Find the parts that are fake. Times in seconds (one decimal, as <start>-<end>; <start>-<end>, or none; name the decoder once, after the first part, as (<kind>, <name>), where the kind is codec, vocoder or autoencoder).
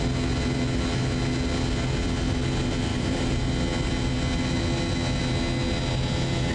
2.9-3.4 (vocoder, BigVGAN v2)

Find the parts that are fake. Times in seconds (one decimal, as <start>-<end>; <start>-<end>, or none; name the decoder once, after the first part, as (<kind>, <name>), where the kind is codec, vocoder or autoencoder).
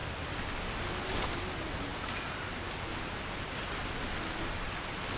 none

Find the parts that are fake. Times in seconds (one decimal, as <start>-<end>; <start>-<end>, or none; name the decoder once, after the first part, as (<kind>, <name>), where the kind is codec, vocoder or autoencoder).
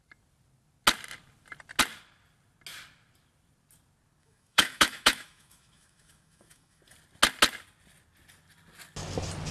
4.2-6.8 (autoencoder, DAC-VAE)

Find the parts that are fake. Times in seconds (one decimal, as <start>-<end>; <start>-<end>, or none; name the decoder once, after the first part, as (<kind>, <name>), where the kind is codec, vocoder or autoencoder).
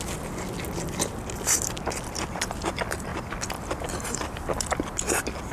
none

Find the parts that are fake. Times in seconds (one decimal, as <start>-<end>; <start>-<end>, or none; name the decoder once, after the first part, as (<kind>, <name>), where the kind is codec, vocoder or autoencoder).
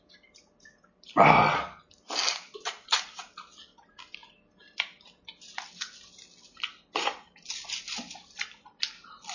none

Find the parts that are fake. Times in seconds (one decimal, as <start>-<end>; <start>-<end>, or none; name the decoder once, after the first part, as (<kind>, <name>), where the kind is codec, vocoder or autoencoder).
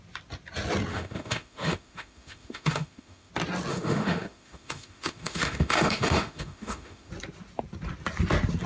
0.9-3.3 (autoencoder, DAC-VAE); 3.7-7.1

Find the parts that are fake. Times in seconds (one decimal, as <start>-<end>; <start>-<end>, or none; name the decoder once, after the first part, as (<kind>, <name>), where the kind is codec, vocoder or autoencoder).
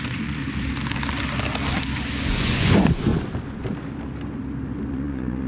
0.0-0.4 (vocoder, Vocos); 2.2-3.1; 4.9-5.5